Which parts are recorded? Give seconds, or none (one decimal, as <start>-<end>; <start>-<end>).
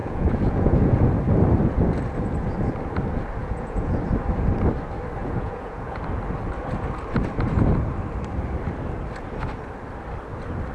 1.1-3.4; 4.0-5.2; 6.0-10.7